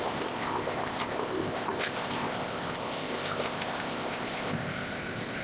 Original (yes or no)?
no